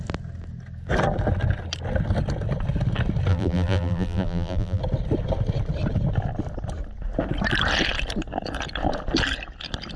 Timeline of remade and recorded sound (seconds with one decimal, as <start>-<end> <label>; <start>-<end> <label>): 0.0-3.3 recorded; 3.3-4.8 remade; 4.8-10.0 recorded